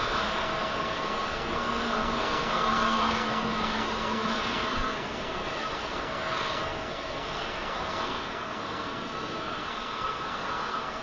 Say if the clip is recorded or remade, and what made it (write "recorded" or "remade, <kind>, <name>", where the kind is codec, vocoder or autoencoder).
remade, codec, SNAC